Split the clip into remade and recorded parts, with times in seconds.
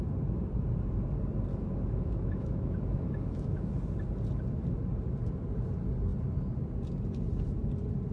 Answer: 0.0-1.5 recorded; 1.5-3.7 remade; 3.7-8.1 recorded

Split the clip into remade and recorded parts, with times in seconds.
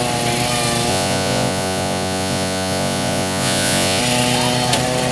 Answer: 0.0-0.9 recorded; 0.9-4.0 remade; 4.0-5.1 recorded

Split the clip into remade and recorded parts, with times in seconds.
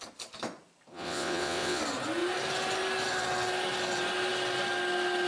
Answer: 0.0-0.9 recorded; 0.9-1.8 remade; 1.8-5.3 recorded